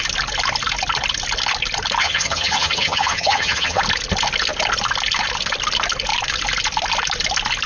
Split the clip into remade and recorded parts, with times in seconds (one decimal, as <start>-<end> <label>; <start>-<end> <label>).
0.0-2.0 recorded; 2.0-3.8 remade; 3.8-7.7 recorded